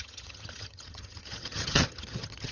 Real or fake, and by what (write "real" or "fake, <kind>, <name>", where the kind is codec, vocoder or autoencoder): fake, vocoder, HiFi-GAN